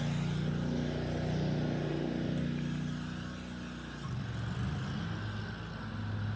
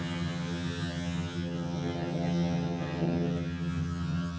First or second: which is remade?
second